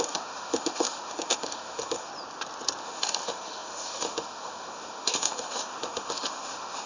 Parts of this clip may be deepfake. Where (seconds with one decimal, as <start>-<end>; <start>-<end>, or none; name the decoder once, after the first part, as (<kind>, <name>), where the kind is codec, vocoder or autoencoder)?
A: 0.0-2.1 (autoencoder, DAC-VAE); 2.8-6.9

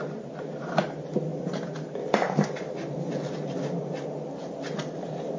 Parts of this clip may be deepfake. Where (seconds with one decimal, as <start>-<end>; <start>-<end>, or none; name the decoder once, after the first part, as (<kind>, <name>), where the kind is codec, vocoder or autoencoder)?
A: none

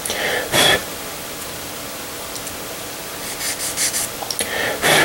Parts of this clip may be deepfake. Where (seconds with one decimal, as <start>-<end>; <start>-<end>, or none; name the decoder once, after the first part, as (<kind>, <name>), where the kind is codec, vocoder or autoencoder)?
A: none

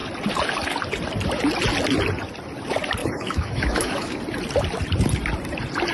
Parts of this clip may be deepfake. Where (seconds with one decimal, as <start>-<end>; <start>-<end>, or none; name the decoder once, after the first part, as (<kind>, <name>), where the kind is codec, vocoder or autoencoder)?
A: 3.0-4.2 (autoencoder, DAC-VAE)

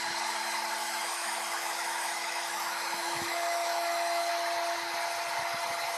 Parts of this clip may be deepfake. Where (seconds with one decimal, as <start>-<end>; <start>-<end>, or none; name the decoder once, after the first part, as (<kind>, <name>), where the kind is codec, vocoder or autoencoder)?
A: 0.8-4.3 (autoencoder, DAC-VAE)